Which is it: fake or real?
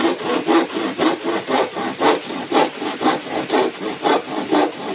real